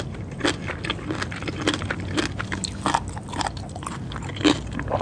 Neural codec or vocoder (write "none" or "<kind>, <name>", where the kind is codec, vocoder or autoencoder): none